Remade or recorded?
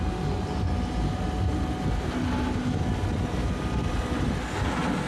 recorded